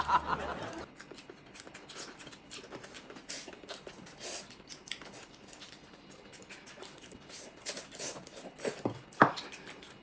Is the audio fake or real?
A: real